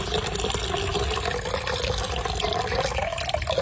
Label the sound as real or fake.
real